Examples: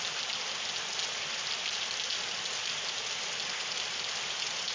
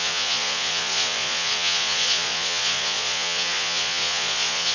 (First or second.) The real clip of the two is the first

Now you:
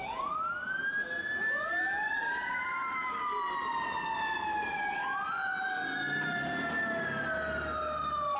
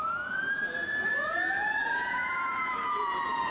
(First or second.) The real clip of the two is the first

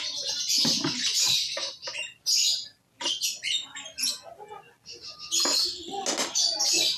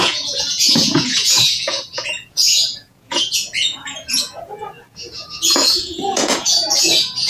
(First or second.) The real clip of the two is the first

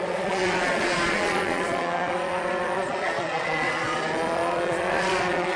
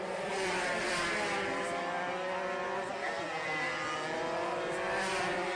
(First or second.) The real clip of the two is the second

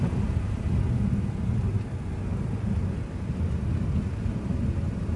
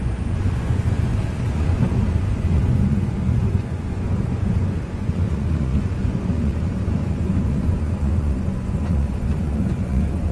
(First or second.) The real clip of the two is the first